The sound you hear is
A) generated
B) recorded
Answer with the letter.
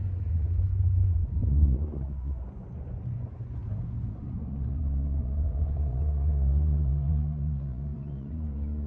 A